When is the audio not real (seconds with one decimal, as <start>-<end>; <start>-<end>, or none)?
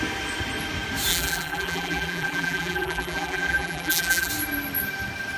1.1-4.3